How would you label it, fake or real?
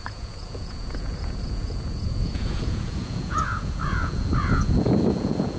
fake